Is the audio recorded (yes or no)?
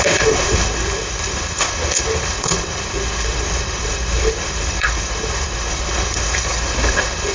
no